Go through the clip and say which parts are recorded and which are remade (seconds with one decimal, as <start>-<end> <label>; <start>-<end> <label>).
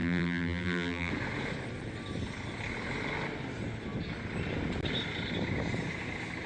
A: 0.0-1.1 remade; 1.1-6.5 recorded